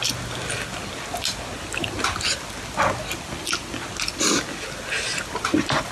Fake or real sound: real